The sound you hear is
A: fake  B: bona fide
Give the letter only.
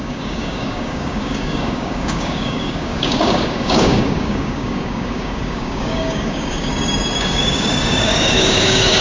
A